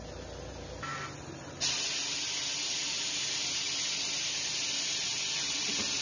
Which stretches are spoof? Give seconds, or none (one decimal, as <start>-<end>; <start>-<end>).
none